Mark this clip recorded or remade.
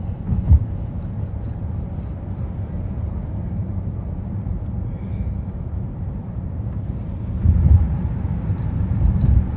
remade